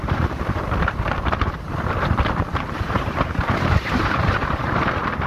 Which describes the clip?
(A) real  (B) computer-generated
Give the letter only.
B